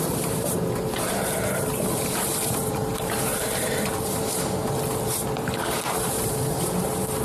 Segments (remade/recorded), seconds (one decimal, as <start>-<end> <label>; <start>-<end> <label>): 0.0-4.6 remade; 4.6-5.1 recorded; 5.1-7.2 remade